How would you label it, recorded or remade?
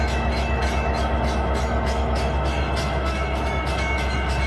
remade